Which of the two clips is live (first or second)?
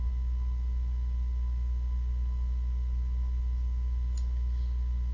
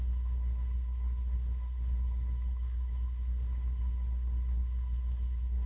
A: first